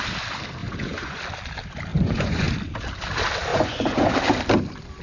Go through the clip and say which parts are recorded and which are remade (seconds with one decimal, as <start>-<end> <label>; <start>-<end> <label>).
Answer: 0.0-0.6 recorded; 0.6-1.2 remade; 1.2-1.9 recorded; 1.9-2.5 remade; 2.5-3.5 recorded; 3.5-4.1 remade; 4.1-5.0 recorded